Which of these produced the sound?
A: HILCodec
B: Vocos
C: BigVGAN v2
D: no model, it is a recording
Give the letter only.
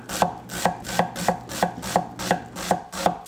D